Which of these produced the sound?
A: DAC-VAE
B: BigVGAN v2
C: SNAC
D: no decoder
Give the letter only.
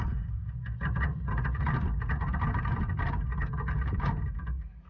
D